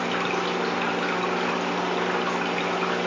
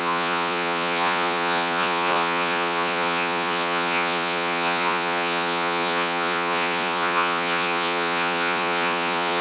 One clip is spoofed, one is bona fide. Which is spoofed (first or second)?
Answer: second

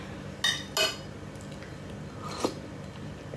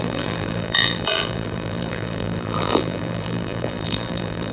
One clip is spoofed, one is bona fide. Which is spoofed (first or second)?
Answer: second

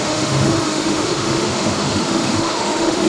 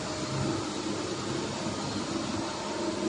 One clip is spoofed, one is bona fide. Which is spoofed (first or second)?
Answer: first